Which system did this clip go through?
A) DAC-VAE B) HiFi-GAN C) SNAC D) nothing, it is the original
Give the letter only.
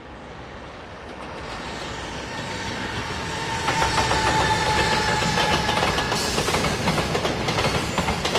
D